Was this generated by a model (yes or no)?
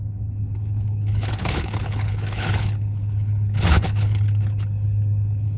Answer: yes